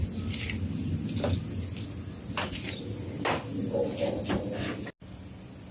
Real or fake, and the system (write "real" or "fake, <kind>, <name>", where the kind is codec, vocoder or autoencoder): real